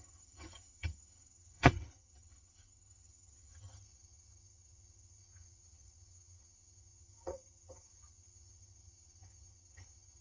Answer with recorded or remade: remade